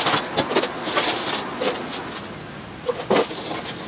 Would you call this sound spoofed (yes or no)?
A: no